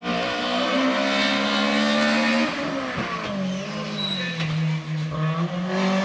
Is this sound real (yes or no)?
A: yes